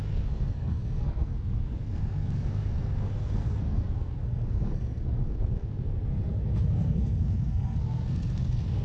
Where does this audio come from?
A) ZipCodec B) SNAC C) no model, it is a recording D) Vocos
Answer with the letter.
B